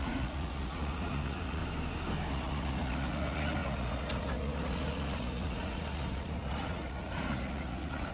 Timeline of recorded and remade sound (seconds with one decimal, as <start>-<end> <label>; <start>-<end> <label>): 0.0-1.6 remade; 1.6-2.3 recorded; 2.3-8.1 remade